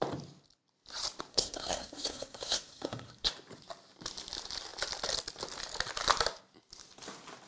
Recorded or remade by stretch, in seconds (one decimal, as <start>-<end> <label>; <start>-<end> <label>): 0.0-1.3 recorded; 1.3-3.3 remade; 3.3-7.5 recorded